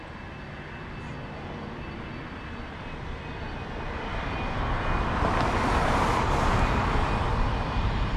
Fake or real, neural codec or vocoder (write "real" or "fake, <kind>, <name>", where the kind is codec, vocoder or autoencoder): real